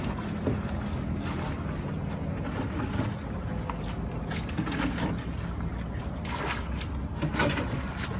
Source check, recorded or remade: recorded